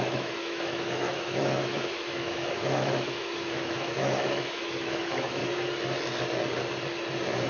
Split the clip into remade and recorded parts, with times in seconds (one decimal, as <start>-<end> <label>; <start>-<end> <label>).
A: 0.0-5.4 remade; 5.4-7.5 recorded